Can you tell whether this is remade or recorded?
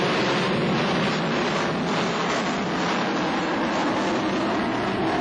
recorded